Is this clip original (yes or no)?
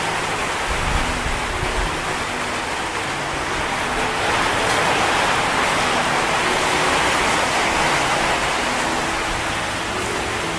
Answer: yes